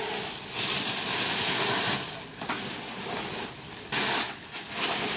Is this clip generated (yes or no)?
no